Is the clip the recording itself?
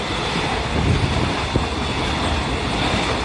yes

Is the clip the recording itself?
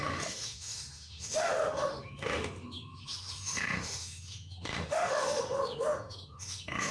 no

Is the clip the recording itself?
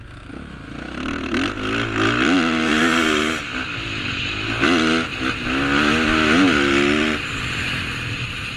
yes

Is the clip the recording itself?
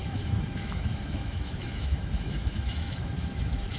no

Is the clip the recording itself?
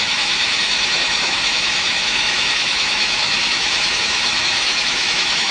no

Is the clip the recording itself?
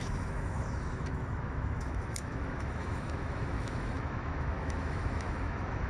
no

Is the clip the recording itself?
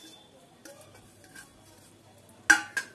yes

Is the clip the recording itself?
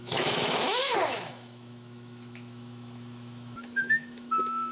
no